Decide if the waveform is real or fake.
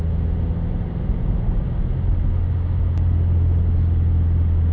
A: real